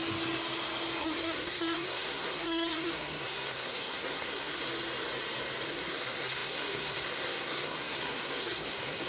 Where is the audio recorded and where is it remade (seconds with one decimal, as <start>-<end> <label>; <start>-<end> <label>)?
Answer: 0.0-1.0 recorded; 1.0-4.7 remade; 4.7-5.7 recorded; 5.7-9.1 remade